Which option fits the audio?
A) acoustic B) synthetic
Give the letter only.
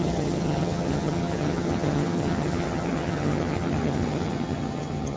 B